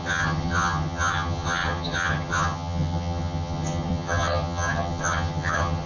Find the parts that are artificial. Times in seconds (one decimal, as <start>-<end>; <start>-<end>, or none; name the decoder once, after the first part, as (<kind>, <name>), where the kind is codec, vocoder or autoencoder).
0.0-5.9 (vocoder, HiFi-GAN)